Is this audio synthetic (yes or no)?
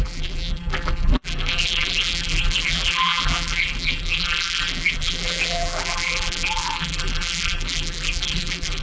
yes